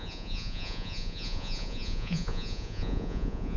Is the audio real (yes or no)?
no